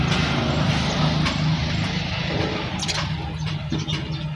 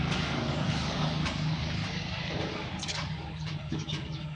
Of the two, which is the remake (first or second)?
second